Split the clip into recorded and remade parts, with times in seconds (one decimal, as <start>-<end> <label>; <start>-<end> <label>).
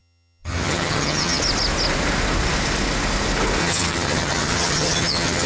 0.0-1.4 remade; 1.4-3.6 recorded; 3.6-5.5 remade